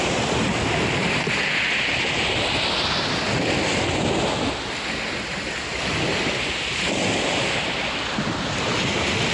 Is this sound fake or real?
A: real